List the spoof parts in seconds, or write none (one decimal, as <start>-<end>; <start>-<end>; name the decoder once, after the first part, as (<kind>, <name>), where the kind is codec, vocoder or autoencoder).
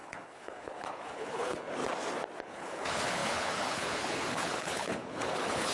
0.0-1.8 (codec, HILCodec); 2.4-5.7